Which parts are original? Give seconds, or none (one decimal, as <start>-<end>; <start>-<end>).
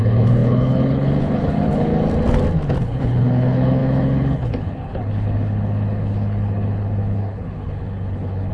1.9-2.8